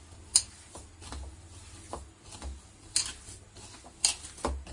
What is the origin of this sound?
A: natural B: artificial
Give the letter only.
A